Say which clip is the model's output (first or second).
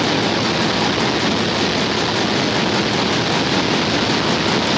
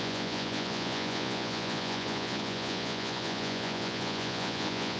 second